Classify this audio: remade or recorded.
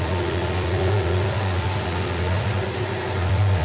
remade